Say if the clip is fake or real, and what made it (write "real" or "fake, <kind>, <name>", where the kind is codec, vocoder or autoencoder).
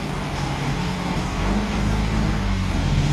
fake, codec, DAC